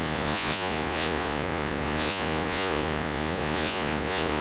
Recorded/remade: remade